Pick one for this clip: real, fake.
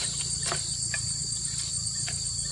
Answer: fake